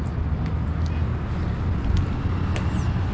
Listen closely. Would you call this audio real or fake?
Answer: real